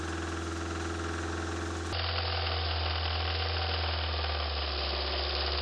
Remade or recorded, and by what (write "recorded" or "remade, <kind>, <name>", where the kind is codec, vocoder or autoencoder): recorded